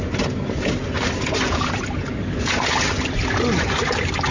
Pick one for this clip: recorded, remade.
recorded